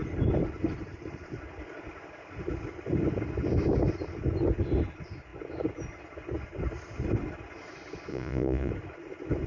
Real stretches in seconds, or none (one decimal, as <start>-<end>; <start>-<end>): 0.0-8.1; 8.7-9.5